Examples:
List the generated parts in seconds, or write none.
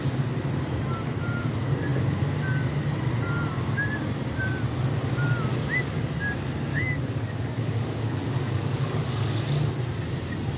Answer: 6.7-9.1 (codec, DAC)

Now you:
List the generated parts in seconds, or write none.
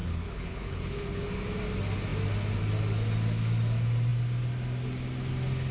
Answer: 0.0-1.3 (codec, HILCodec)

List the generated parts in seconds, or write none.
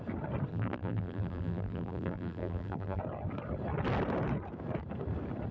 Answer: 0.5-3.0 (vocoder, BigVGAN v2)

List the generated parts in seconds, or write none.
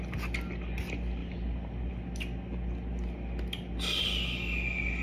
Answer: 1.2-1.9 (vocoder, BigVGAN v2)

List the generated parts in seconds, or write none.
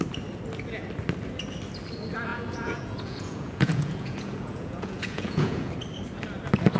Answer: 2.3-5.7 (vocoder, Vocos)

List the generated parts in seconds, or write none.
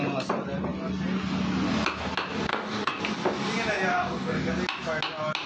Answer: 2.5-3.0 (codec, DAC); 3.9-4.5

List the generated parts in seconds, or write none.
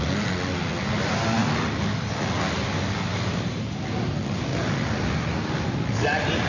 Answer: none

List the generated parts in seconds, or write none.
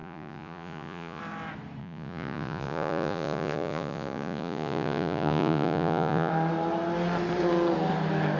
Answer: 0.0-1.2 (vocoder, Vocos); 1.8-6.3